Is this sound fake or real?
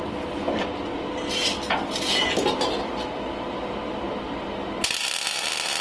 real